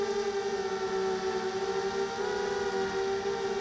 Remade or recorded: recorded